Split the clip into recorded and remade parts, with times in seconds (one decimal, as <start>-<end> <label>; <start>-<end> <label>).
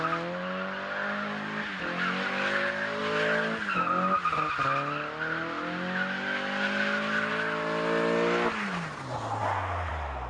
0.0-10.3 recorded